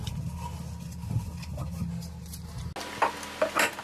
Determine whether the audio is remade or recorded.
recorded